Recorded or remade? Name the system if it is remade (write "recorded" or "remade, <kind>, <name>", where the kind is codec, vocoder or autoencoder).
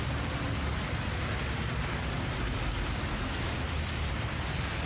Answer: recorded